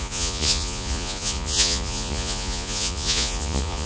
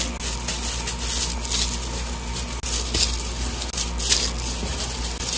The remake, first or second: first